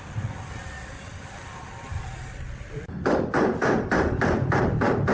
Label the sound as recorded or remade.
recorded